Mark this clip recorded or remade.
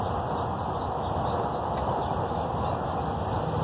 recorded